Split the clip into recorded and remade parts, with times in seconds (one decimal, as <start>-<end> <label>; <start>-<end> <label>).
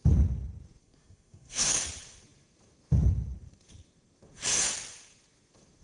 0.0-0.8 recorded; 0.8-1.7 remade; 1.7-5.8 recorded